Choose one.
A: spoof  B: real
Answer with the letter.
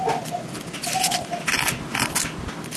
B